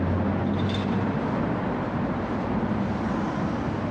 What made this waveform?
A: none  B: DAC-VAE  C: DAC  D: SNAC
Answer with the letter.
A